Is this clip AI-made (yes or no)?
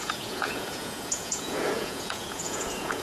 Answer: yes